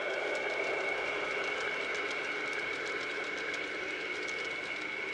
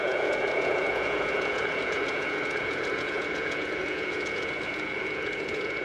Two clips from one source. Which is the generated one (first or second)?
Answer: second